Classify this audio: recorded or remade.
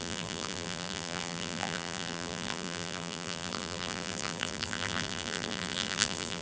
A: remade